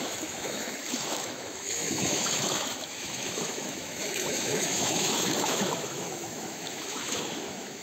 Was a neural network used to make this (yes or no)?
yes